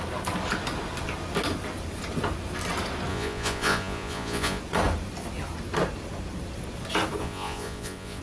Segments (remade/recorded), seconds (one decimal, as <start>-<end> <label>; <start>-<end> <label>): 0.0-3.1 recorded; 3.1-4.6 remade; 4.6-7.2 recorded; 7.2-8.2 remade